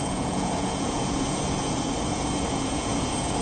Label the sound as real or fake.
fake